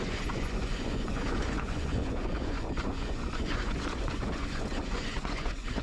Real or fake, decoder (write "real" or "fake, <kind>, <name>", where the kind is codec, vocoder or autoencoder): fake, vocoder, Vocos